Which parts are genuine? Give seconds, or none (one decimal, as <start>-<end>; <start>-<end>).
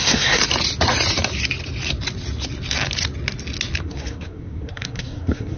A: 0.4-3.8